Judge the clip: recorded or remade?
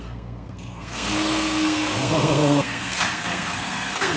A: remade